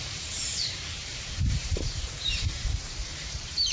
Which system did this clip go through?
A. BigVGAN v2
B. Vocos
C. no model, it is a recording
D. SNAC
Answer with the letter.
A